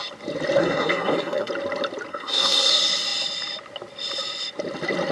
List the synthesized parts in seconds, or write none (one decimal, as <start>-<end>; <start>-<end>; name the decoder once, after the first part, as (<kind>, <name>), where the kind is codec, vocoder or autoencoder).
0.6-1.5 (codec, SNAC); 2.1-2.7